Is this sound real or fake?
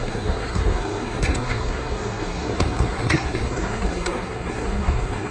fake